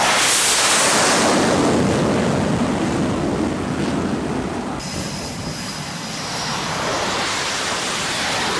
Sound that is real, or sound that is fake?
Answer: real